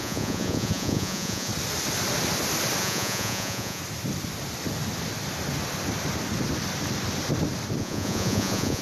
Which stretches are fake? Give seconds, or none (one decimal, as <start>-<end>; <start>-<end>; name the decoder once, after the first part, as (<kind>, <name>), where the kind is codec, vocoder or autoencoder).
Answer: 0.0-1.5 (vocoder, Vocos); 2.8-3.8; 7.8-8.8